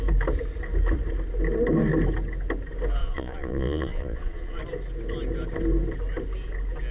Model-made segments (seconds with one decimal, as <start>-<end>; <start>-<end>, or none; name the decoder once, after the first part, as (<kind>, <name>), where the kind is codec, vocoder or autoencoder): 3.0-4.6 (vocoder, Vocos)